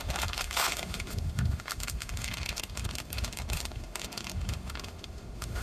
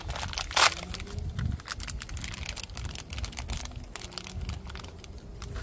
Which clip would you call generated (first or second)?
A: first